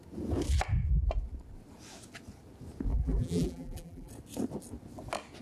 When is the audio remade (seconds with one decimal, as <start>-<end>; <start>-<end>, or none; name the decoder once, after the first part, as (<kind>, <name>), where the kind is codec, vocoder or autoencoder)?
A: 2.9-4.1 (vocoder, BigVGAN v2)